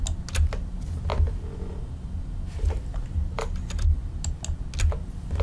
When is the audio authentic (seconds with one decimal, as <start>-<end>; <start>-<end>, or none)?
0.0-5.4